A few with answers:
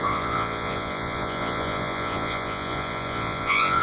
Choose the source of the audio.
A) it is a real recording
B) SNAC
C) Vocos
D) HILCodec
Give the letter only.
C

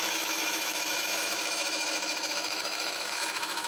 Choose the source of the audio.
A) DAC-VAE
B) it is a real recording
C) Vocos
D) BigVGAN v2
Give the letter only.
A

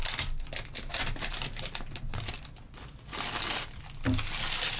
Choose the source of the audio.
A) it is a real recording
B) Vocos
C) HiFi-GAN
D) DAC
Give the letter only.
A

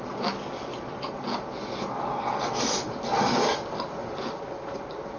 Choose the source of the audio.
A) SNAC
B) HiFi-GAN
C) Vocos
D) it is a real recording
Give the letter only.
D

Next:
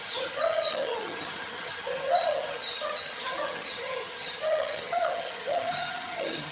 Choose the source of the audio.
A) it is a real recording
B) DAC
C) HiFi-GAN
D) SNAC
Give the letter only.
C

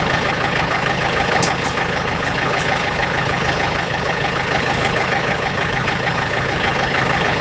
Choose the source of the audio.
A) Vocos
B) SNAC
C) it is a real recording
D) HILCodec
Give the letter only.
D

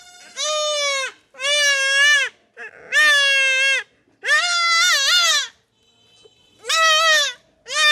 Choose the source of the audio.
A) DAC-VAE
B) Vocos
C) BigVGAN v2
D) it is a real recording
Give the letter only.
D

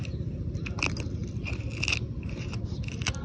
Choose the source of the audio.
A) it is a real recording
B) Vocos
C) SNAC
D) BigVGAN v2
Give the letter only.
A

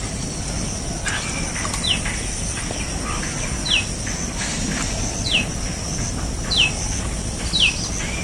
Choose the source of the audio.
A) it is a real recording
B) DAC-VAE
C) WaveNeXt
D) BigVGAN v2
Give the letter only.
A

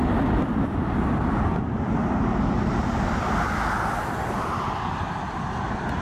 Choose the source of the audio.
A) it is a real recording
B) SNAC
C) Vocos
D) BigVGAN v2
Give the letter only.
A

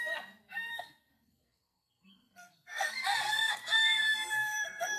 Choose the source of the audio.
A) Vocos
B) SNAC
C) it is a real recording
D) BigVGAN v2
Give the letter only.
B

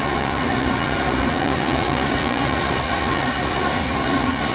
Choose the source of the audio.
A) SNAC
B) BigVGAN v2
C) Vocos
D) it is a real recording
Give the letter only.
C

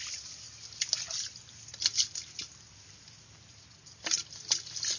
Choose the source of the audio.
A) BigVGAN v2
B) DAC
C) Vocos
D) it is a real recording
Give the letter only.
D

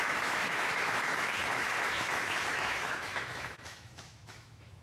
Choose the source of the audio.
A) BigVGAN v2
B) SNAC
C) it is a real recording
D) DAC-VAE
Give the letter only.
D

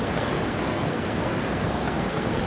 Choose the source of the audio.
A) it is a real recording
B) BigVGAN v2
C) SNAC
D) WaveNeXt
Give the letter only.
C